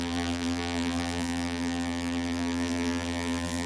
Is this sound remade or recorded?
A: remade